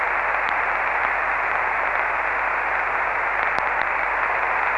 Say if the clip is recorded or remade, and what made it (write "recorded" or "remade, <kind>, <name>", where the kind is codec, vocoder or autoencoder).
recorded